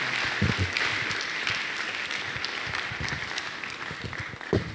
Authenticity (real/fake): real